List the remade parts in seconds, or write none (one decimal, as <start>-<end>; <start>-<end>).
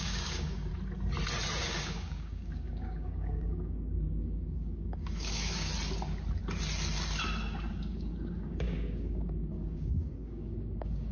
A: 0.0-0.7; 1.6-5.7; 7.7-11.1